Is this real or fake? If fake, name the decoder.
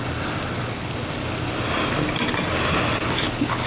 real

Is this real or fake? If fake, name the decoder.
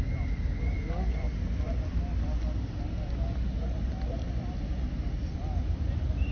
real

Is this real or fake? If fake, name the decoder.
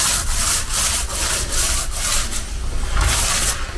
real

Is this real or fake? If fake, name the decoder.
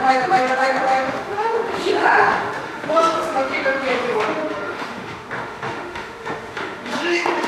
fake, autoencoder, DAC-VAE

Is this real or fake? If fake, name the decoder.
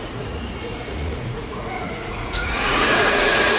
fake, vocoder, Vocos